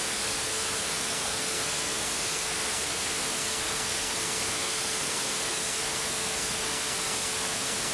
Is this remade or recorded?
remade